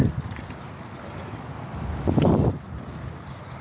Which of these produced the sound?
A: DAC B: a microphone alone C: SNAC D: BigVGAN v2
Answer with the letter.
B